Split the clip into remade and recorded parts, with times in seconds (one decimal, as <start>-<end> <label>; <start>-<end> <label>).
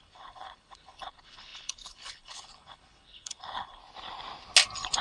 0.0-3.8 remade; 3.8-5.0 recorded